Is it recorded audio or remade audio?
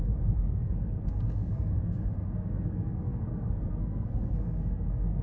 remade